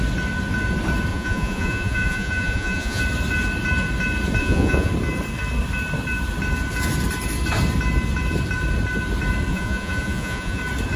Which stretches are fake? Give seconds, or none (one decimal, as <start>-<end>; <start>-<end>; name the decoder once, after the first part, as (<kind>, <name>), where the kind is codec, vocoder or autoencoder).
1.1-3.0 (vocoder, Vocos); 4.4-4.9; 9.5-10.6